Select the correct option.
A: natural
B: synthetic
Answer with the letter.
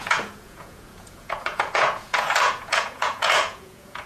B